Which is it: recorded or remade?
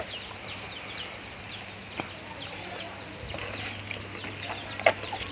recorded